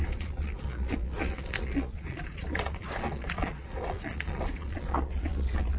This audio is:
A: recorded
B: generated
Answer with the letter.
B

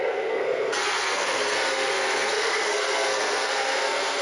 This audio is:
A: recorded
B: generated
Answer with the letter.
B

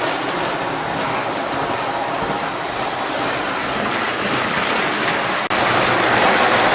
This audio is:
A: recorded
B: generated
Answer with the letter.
A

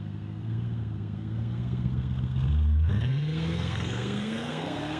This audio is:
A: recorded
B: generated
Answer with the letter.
B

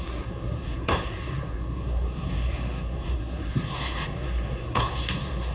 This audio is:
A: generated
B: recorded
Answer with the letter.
A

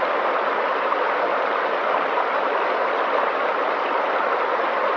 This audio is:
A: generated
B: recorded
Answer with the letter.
B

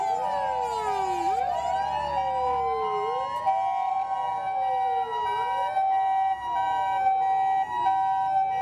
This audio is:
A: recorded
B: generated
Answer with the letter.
A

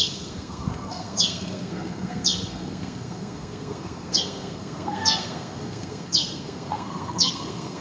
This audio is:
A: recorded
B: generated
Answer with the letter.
B